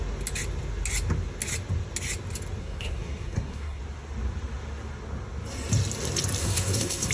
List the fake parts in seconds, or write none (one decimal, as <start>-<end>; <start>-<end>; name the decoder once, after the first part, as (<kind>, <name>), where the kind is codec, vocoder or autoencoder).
2.6-3.8 (codec, SNAC); 6.4-7.1